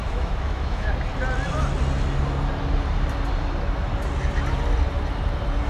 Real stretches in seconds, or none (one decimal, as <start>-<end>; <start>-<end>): 0.9-5.7